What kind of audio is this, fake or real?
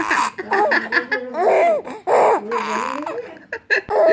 real